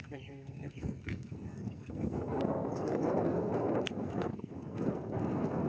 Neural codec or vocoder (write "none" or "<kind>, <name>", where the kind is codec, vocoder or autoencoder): codec, SNAC